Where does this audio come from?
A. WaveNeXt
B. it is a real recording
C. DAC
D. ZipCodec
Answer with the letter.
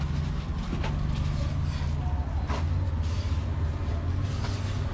B